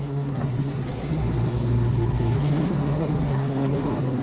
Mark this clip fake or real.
fake